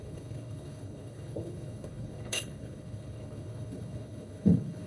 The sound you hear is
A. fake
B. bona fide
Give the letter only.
A